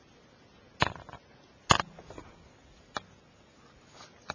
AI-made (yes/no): no